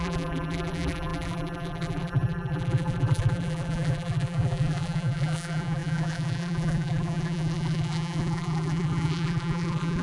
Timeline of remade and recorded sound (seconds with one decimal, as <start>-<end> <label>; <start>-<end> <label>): 0.0-10.0 remade